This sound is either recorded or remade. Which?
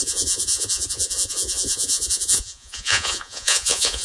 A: remade